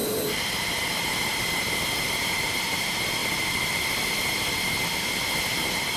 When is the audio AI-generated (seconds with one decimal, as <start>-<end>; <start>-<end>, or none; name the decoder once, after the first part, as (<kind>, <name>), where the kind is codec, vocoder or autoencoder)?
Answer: 0.0-0.5 (vocoder, BigVGAN v2); 3.2-3.8